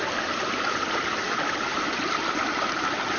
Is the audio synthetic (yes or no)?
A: no